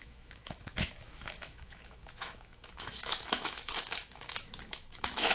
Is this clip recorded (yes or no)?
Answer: no